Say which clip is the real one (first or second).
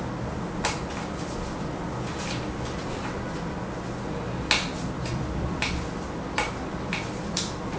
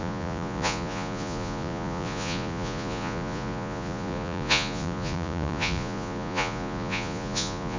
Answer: first